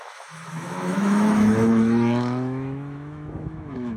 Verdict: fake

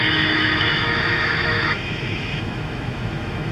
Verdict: fake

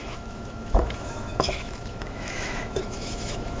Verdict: fake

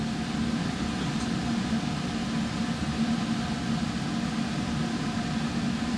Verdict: real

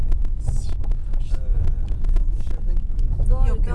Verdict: real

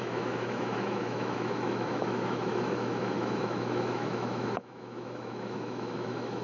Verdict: fake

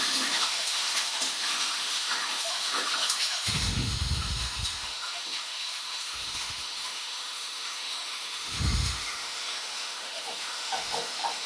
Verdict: fake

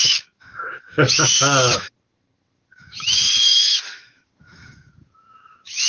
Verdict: fake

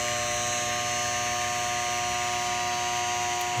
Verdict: real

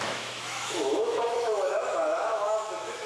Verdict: fake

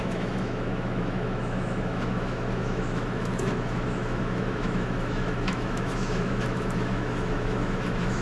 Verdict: fake